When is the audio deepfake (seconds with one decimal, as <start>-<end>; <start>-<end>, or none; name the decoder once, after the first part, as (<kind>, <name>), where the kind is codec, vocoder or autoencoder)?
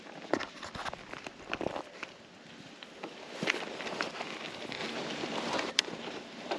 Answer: 0.0-4.8 (vocoder, BigVGAN v2); 5.7-6.6